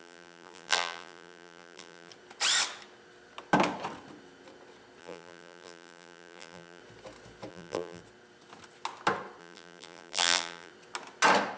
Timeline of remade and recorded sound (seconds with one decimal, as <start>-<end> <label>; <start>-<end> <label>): 0.0-2.1 remade; 2.1-5.0 recorded; 5.0-6.8 remade; 6.8-7.5 recorded; 7.5-8.0 remade; 8.0-9.4 recorded; 9.4-10.7 remade; 10.7-11.6 recorded